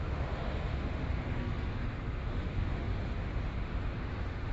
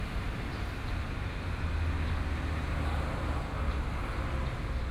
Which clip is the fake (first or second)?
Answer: first